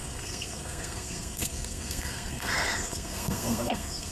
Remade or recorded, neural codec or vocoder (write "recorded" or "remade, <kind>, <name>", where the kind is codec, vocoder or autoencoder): remade, codec, SNAC